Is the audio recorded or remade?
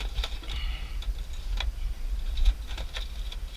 recorded